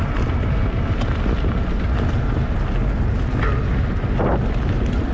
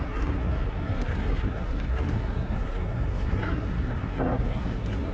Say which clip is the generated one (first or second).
second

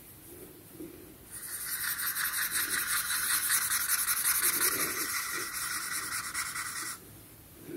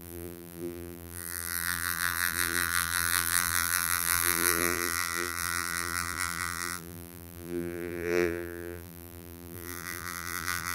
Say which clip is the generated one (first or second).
second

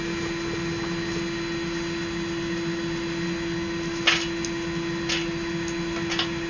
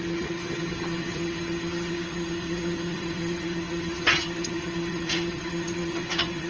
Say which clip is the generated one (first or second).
second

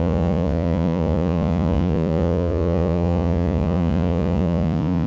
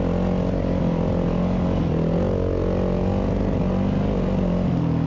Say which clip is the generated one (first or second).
first